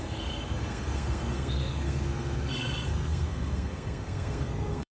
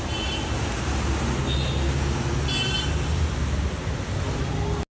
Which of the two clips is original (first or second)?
second